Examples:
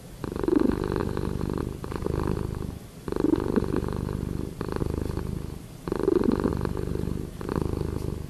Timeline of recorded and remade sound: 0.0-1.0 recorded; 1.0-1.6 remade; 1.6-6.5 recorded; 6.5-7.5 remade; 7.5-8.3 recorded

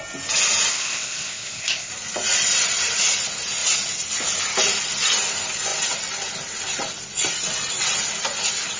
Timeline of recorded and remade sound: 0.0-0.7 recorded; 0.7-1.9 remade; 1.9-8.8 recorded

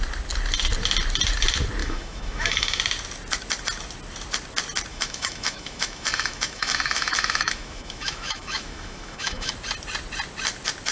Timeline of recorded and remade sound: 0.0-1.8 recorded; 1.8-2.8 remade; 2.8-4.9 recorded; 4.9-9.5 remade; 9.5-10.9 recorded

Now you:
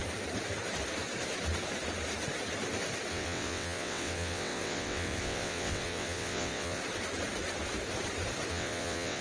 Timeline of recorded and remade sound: 0.0-3.1 recorded; 3.1-6.8 remade; 6.8-8.5 recorded; 8.5-9.2 remade

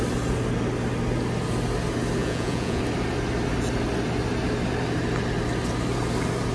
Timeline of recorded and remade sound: 0.0-2.2 recorded; 2.2-2.8 remade; 2.8-6.5 recorded

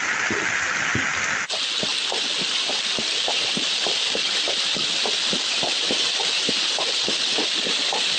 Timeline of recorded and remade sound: 0.0-8.2 recorded

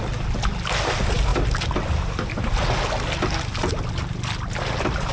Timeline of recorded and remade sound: 0.0-5.1 recorded

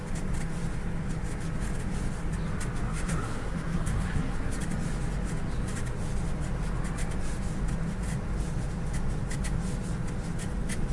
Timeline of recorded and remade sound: 0.0-2.9 recorded; 2.9-4.6 remade; 4.6-10.9 recorded